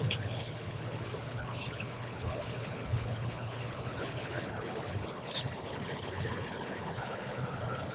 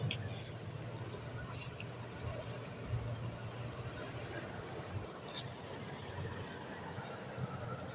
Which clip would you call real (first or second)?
second